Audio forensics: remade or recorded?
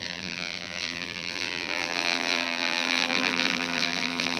remade